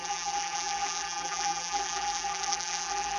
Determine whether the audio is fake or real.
fake